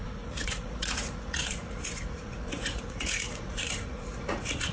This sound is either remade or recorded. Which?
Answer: remade